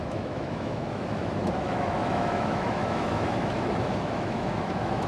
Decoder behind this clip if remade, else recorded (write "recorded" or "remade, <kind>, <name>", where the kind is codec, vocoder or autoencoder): remade, autoencoder, DAC-VAE